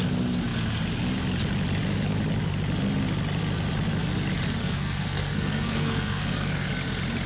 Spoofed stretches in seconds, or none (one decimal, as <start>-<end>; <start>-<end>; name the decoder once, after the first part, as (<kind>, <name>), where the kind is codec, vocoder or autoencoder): 4.6-6.7 (codec, SNAC)